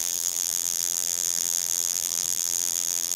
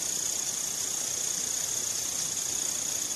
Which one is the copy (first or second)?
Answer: first